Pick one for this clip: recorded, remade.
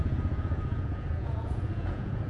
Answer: remade